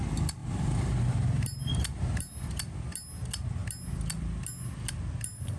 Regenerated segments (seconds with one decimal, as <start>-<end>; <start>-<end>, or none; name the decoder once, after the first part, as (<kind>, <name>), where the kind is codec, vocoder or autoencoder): none